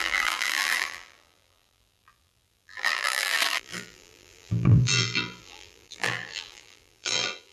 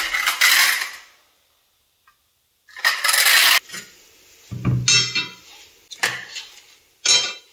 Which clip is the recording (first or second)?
second